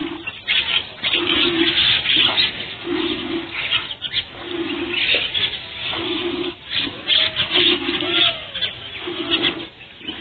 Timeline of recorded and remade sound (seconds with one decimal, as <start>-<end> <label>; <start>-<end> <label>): 0.0-10.2 recorded